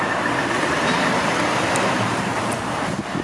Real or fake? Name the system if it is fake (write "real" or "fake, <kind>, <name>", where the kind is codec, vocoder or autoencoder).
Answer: fake, vocoder, BigVGAN v2